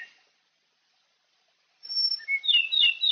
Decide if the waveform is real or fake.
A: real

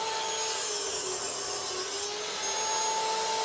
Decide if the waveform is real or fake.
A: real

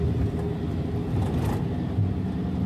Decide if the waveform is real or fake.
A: real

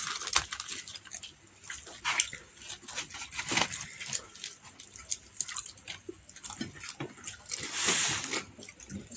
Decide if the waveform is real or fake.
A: real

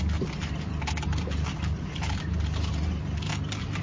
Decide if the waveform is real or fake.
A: real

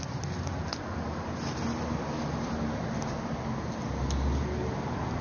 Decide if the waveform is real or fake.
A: real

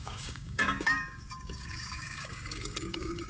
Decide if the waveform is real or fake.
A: fake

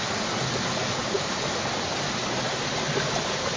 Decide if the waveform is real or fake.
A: real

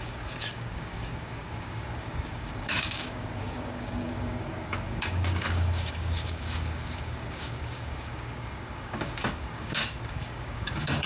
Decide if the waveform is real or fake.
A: fake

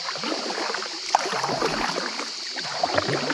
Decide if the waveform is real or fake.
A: real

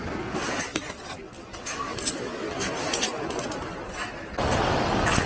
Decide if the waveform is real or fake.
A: real